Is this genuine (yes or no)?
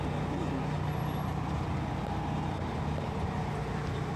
yes